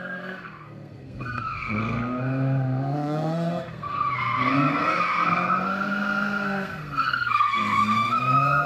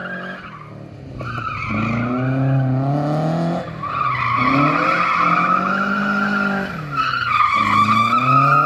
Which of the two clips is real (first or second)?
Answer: second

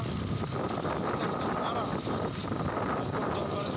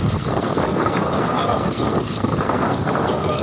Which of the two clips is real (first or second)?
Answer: first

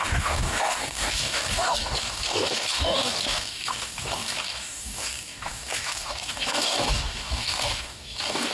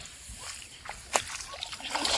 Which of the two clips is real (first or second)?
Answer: second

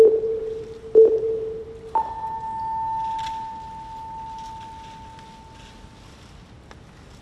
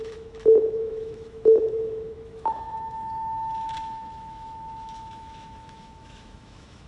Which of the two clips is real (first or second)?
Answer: first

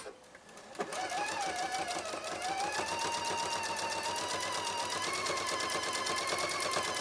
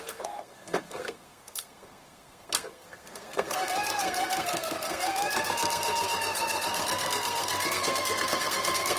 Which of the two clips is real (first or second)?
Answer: first